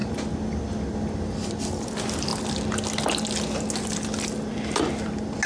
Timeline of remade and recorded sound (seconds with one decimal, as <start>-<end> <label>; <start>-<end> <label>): 0.0-5.5 recorded